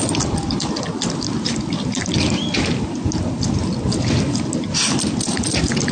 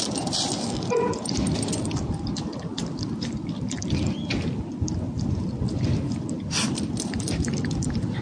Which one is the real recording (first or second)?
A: first